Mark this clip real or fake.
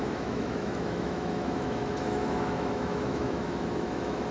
fake